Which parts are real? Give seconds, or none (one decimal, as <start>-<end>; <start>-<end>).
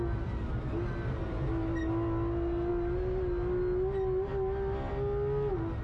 0.0-5.8